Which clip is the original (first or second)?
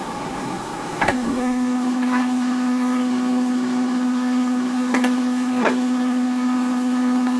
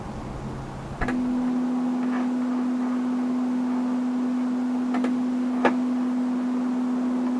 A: second